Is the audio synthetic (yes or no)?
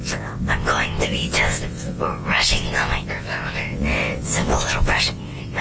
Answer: yes